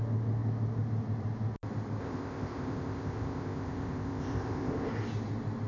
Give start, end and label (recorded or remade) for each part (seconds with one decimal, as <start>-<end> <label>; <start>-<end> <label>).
0.0-2.0 recorded; 2.0-4.9 remade; 4.9-5.7 recorded